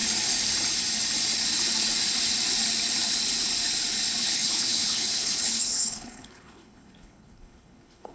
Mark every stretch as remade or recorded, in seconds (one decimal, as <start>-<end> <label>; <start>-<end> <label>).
0.0-4.2 recorded; 4.2-8.1 remade